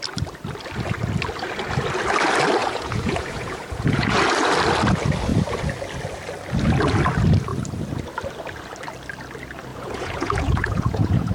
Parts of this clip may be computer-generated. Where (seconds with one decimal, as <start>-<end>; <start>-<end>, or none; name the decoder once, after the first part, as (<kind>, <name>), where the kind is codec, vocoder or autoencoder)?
2.6-4.2 (vocoder, Vocos); 9.7-11.3